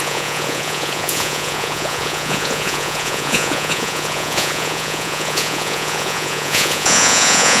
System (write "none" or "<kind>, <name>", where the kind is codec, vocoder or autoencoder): vocoder, Vocos